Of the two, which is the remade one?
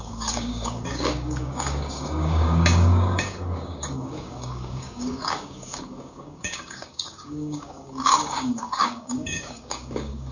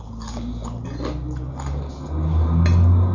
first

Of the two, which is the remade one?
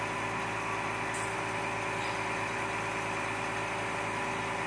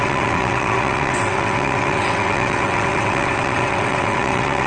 second